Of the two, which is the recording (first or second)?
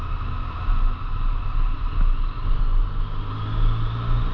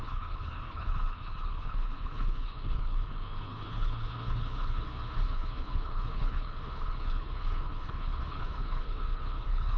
first